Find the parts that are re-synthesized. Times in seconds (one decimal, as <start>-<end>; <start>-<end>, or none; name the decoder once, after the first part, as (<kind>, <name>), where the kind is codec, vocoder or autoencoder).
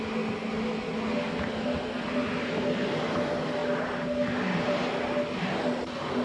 none